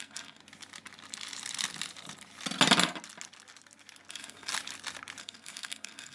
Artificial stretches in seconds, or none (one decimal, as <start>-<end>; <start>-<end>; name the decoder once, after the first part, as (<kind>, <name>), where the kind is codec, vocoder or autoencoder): 0.0-0.4 (codec, SNAC); 4.1-4.5; 5.2-6.1